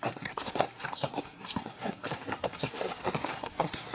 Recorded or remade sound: remade